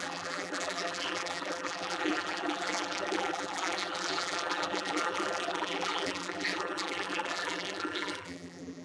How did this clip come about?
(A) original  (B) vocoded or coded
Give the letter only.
B